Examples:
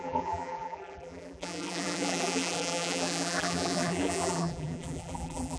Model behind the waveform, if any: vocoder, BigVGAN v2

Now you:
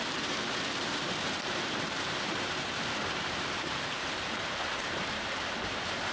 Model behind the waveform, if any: vocoder, BigVGAN v2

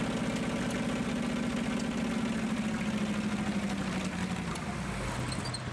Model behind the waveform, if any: none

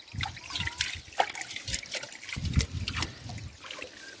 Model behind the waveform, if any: none